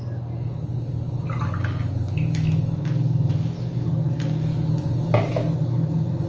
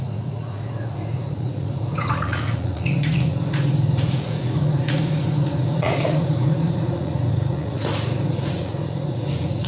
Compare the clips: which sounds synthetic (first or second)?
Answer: second